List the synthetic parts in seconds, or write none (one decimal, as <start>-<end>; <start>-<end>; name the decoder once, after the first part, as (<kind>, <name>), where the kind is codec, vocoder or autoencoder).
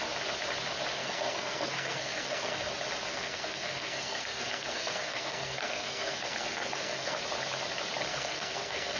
1.0-2.7 (codec, SNAC); 3.1-7.2; 8.1-9.0